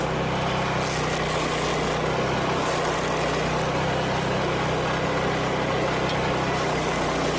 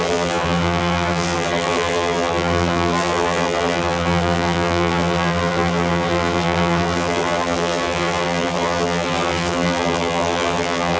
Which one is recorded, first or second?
first